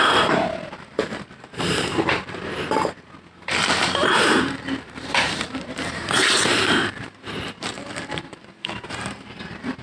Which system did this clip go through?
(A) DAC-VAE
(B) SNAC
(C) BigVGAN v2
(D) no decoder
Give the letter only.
C